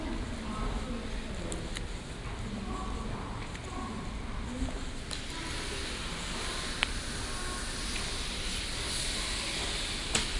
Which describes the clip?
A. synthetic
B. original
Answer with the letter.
B